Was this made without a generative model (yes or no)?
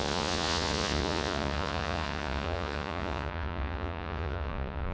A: no